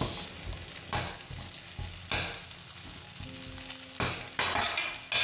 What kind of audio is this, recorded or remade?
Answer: recorded